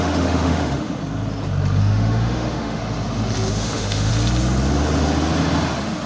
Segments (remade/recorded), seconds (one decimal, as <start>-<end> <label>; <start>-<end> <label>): 0.0-1.0 remade; 1.0-1.8 recorded; 1.8-2.8 remade; 2.8-3.5 recorded; 3.5-4.1 remade; 4.1-6.1 recorded